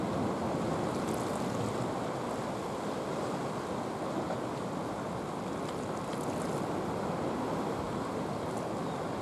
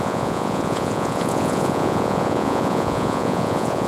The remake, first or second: second